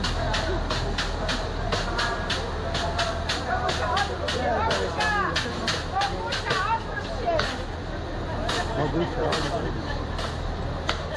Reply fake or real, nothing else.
real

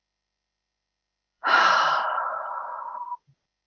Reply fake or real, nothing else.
fake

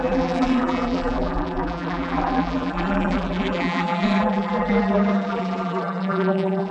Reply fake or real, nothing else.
fake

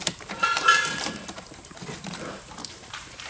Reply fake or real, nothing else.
fake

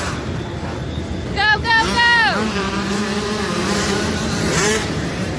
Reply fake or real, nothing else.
fake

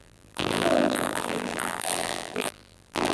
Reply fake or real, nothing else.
fake